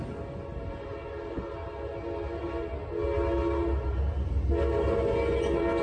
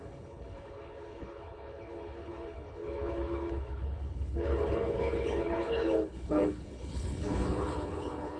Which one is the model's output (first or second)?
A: second